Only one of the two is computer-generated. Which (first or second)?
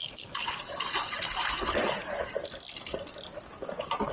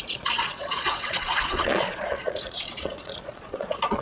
second